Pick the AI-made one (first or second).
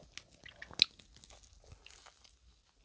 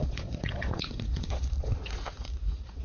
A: second